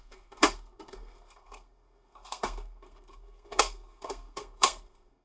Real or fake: fake